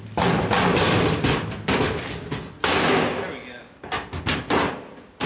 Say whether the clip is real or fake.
real